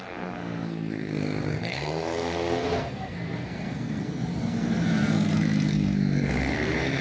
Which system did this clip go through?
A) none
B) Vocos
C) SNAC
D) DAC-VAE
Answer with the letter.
C